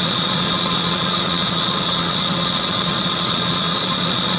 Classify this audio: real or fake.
fake